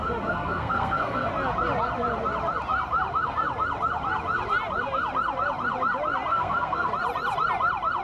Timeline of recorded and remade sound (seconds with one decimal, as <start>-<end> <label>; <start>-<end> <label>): 0.0-1.3 remade; 1.3-6.3 recorded; 6.3-6.9 remade; 6.9-8.0 recorded